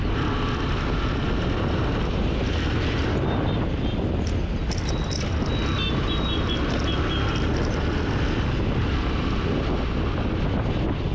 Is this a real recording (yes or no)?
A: yes